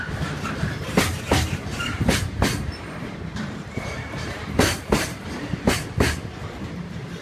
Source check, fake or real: fake